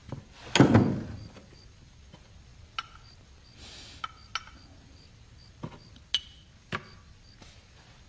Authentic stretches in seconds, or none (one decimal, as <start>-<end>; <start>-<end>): 0.0-8.1